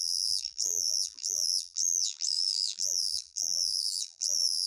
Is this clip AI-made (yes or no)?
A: yes